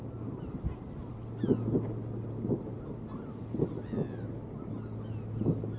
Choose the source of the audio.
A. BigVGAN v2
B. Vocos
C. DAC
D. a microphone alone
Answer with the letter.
D